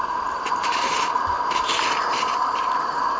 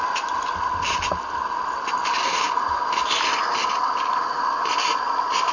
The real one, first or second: second